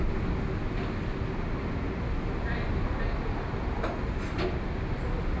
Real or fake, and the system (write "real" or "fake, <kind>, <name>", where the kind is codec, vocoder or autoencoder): real